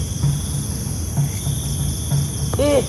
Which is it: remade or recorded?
recorded